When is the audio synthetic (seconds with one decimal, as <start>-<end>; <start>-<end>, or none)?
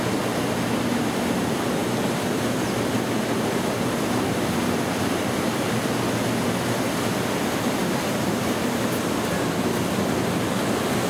7.8-8.4